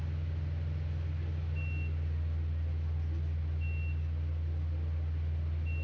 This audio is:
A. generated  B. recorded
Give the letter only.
B